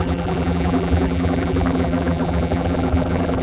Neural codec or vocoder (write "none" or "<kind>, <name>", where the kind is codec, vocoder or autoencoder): vocoder, BigVGAN v2